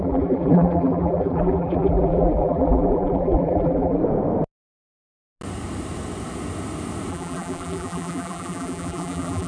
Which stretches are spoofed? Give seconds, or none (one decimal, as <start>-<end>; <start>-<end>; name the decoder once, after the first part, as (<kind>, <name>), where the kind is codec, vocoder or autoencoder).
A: 0.0-4.0 (vocoder, BigVGAN v2); 7.1-9.5